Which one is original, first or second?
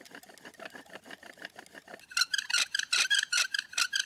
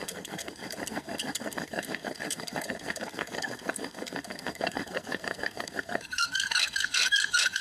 first